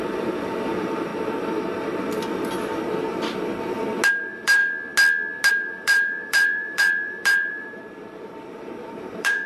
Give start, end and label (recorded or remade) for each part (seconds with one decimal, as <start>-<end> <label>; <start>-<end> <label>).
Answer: 0.0-1.1 remade; 1.1-4.1 recorded; 4.1-4.6 remade; 4.6-5.5 recorded; 5.5-9.5 remade